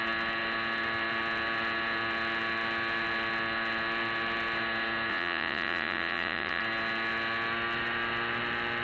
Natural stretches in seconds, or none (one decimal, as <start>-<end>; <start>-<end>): 0.0-5.1; 6.6-8.8